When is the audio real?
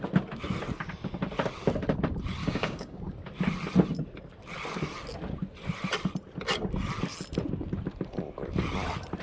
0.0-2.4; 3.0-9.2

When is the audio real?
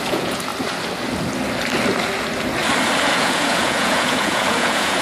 0.5-3.0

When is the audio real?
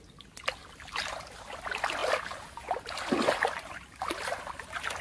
0.0-5.0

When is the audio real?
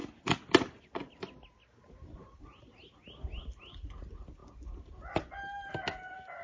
0.0-6.4